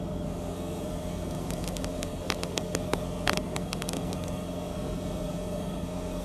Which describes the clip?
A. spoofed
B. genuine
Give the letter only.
A